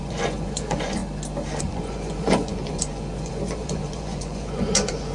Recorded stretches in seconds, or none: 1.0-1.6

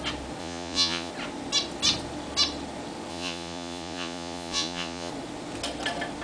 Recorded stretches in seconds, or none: 0.0-0.4; 1.1-3.1; 5.1-6.2

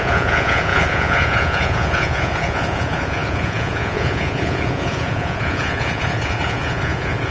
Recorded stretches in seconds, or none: none

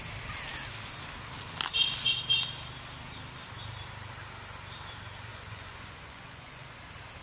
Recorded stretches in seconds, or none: 0.0-5.3; 6.8-7.2

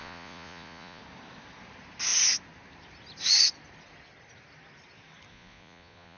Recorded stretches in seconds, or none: 1.0-5.3

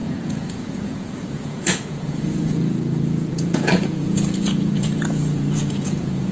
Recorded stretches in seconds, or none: none

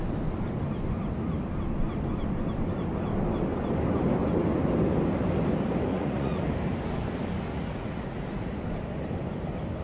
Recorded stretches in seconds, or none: 0.0-5.9; 6.4-7.5; 8.5-9.8

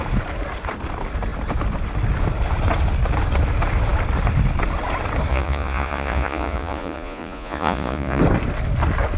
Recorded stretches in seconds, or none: 0.0-5.3; 8.2-9.2